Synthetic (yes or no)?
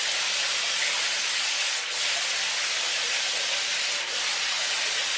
no